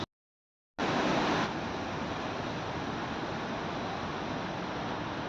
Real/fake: real